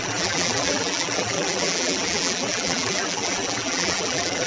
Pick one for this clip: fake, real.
fake